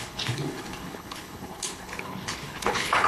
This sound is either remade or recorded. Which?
remade